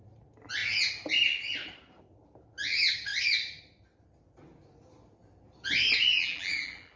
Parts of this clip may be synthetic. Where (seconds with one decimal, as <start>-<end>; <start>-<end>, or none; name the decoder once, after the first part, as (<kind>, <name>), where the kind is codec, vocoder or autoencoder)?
6.1-7.0 (vocoder, BigVGAN v2)